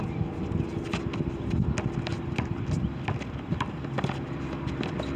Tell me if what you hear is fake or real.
real